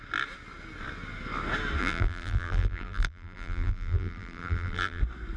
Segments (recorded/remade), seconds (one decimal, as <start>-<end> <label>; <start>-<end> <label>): 0.0-1.8 recorded; 1.8-5.0 remade; 5.0-5.4 recorded